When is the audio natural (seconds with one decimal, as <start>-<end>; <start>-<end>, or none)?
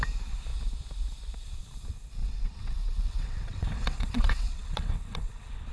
0.0-2.2